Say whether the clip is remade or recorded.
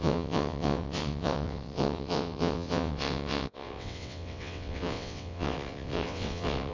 remade